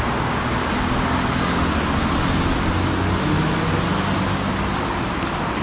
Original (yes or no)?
yes